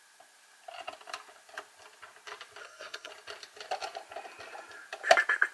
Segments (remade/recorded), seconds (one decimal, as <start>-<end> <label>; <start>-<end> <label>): 0.0-2.6 recorded; 2.6-3.1 remade; 3.1-5.5 recorded